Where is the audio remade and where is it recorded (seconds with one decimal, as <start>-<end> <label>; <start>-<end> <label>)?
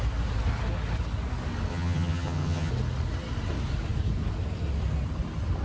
0.0-1.7 recorded; 1.7-2.7 remade; 2.7-5.6 recorded